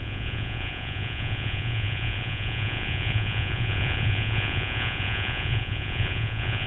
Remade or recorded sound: remade